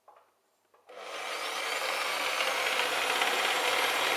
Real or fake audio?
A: real